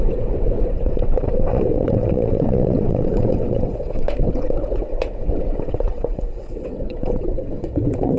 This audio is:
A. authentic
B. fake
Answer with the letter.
B